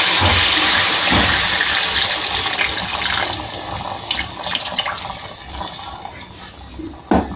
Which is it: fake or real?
real